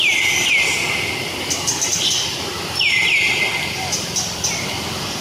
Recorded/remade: recorded